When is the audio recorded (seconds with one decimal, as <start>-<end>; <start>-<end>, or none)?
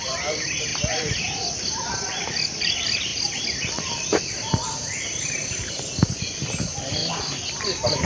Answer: 0.7-1.9; 7.0-7.5